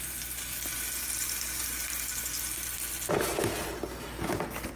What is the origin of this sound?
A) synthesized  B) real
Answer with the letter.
B